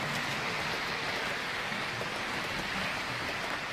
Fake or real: real